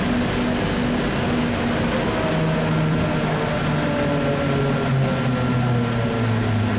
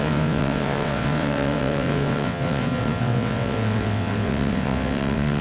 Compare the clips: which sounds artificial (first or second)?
second